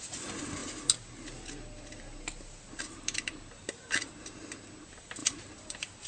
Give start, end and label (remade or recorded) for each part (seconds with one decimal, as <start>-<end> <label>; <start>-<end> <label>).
0.0-6.1 recorded